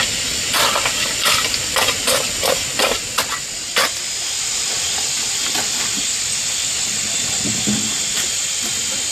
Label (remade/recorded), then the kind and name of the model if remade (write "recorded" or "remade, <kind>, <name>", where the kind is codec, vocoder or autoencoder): recorded